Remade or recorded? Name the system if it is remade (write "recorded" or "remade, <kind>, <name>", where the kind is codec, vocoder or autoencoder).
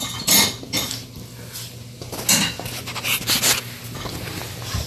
recorded